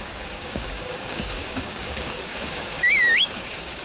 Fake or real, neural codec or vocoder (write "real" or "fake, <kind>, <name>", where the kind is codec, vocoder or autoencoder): fake, codec, DAC